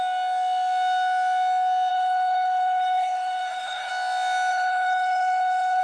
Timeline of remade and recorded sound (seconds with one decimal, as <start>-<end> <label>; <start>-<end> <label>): 0.0-1.9 recorded; 1.9-3.9 remade; 3.9-4.5 recorded; 4.5-5.8 remade